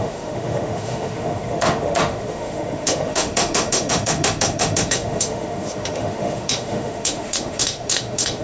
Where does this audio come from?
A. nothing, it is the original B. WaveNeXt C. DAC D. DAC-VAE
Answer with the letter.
D